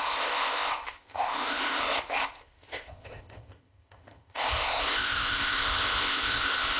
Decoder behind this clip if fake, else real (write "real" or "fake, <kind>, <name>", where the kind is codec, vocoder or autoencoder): fake, codec, ZipCodec